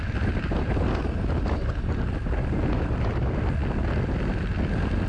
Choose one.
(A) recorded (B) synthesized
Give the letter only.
A